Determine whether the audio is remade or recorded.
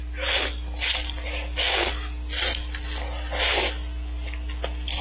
recorded